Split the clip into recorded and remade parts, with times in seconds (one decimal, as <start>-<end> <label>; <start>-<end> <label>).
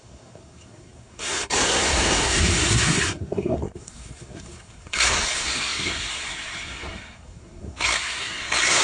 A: 0.0-8.8 remade